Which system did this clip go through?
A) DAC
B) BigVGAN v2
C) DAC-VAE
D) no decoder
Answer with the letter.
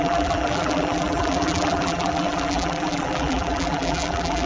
B